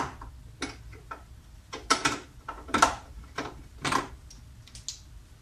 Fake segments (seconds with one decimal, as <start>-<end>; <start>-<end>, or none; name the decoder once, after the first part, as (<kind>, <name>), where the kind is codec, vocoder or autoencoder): 0.9-4.1 (vocoder, BigVGAN v2)